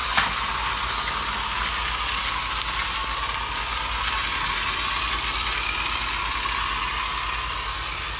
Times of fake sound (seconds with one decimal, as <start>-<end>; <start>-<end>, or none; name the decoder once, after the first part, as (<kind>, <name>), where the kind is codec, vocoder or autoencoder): none